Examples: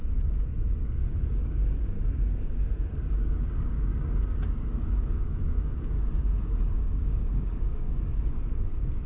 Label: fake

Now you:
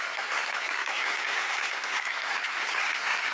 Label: fake